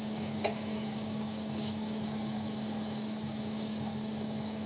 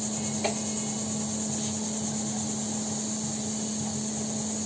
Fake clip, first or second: first